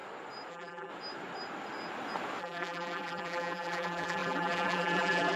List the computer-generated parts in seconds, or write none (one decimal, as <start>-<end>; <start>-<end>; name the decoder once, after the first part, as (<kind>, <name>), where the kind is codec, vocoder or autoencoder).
0.5-0.9 (vocoder, BigVGAN v2); 2.4-5.4